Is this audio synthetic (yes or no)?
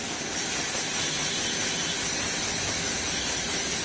no